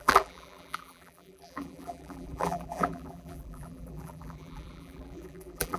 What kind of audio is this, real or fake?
fake